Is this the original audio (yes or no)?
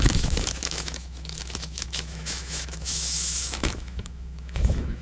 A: no